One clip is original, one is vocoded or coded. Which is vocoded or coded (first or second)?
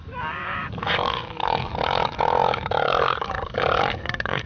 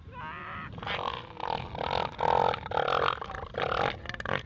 first